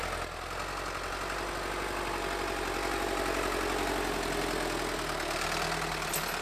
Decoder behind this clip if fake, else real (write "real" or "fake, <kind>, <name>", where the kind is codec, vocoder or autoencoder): real